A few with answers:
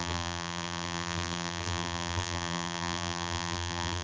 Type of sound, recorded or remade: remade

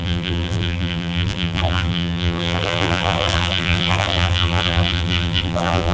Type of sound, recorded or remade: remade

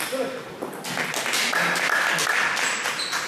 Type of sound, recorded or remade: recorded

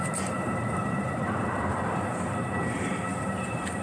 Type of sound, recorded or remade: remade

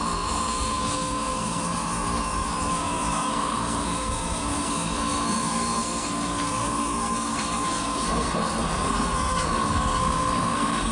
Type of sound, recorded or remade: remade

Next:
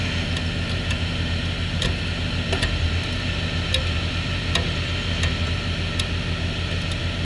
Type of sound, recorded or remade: recorded